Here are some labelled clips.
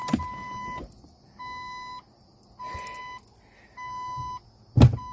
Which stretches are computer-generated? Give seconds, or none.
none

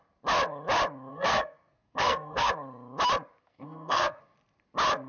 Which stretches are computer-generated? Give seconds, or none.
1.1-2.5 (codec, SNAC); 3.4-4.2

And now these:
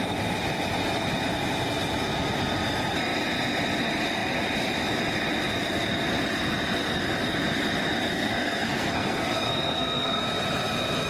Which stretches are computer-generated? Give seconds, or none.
8.1-10.2 (codec, SNAC)

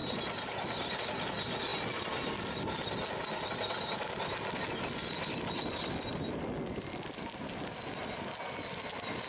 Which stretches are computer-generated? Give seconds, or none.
none

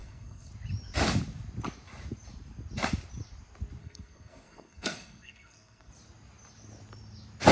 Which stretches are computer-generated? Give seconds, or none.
0.0-0.5 (codec, SNAC); 3.8-5.9